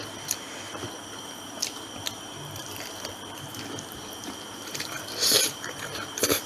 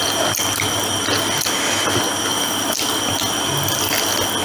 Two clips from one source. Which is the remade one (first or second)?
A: first